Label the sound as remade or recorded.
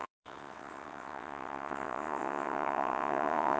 remade